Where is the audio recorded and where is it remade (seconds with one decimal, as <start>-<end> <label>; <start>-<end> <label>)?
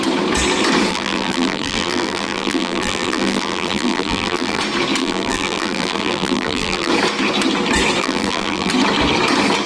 0.0-0.9 recorded; 0.9-4.6 remade; 4.6-5.0 recorded; 5.0-6.9 remade; 6.9-8.0 recorded; 8.0-8.7 remade; 8.7-9.7 recorded